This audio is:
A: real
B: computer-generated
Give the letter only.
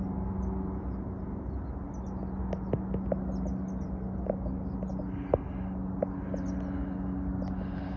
A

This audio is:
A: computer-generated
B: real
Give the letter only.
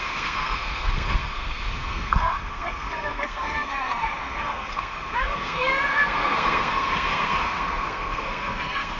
A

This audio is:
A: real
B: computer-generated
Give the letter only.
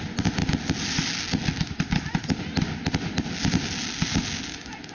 A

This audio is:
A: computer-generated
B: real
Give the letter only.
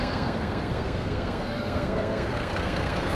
A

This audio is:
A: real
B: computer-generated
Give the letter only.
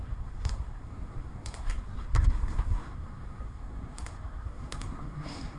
B